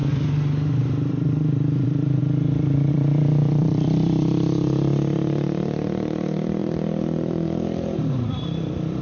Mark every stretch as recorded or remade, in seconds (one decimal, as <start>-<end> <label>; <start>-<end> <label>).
0.0-0.8 recorded; 0.8-2.2 remade; 2.2-2.9 recorded; 2.9-9.0 remade